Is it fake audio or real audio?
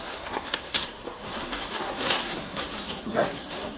fake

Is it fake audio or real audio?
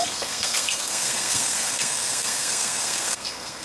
fake